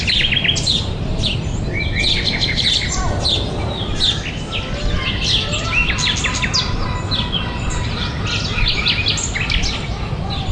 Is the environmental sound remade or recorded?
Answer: recorded